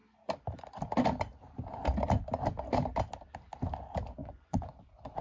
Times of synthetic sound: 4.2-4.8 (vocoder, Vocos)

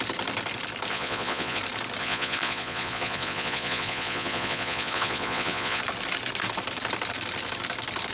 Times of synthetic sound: 0.9-1.6 (vocoder, Vocos); 2.0-5.8

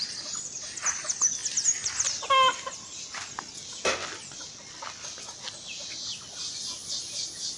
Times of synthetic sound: none

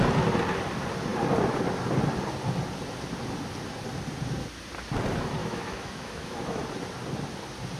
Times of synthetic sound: 5.4-6.6 (autoencoder, DAC-VAE)

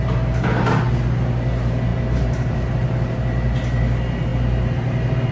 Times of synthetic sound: none